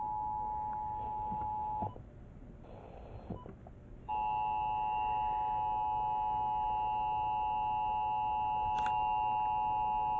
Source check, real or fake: real